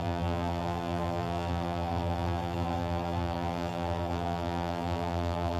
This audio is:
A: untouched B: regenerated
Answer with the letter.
B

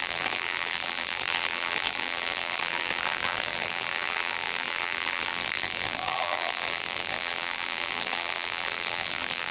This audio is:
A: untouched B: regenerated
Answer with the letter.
B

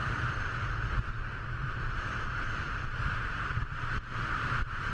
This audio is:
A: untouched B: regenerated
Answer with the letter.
B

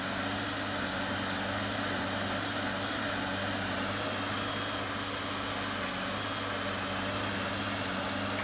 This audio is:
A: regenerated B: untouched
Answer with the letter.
B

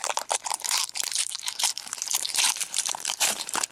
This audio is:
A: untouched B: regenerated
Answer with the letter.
B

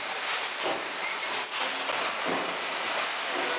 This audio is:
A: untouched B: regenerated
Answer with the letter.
A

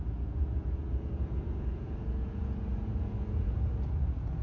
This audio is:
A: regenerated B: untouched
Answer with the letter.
A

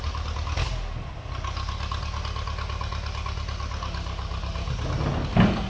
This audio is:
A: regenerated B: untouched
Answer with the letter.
B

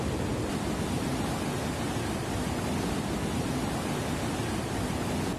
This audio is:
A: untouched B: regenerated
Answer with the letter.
A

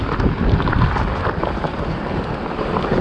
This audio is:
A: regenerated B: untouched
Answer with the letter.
B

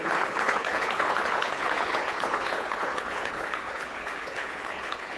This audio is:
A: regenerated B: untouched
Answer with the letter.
A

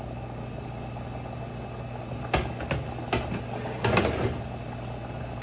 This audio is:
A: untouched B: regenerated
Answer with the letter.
A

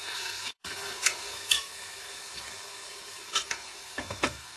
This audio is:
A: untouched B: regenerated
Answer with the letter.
B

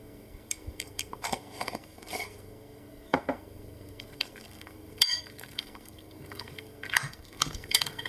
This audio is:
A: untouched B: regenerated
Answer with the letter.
B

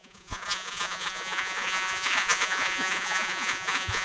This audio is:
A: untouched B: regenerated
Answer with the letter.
B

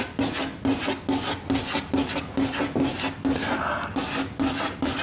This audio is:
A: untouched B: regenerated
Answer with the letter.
A